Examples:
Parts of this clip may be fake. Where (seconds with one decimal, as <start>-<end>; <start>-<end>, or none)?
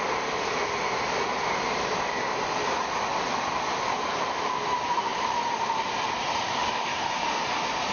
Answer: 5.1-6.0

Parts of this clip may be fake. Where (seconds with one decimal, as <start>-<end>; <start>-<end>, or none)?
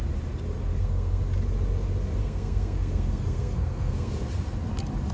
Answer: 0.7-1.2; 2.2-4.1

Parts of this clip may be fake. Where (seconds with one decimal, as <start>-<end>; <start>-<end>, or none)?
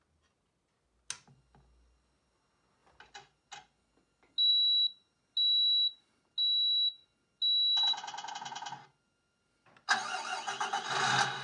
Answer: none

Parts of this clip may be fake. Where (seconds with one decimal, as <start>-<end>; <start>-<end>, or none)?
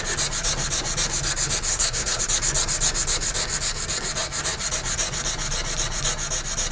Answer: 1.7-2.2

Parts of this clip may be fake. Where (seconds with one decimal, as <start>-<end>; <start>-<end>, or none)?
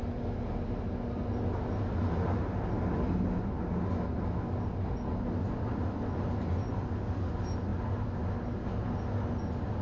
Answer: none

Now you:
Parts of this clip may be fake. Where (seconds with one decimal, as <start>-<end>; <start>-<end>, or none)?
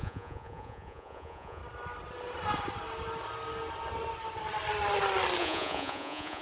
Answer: 0.0-1.6; 5.4-6.4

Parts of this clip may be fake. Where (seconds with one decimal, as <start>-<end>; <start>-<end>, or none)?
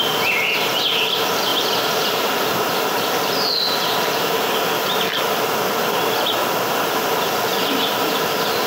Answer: none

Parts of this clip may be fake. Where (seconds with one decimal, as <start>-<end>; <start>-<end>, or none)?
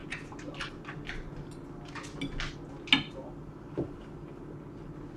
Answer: none